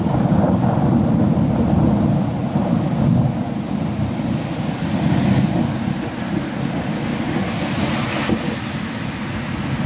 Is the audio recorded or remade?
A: remade